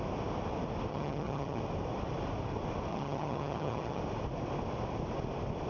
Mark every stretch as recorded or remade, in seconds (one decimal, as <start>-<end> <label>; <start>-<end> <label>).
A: 0.0-0.9 recorded; 0.9-1.6 remade; 1.6-2.9 recorded; 2.9-4.0 remade; 4.0-5.7 recorded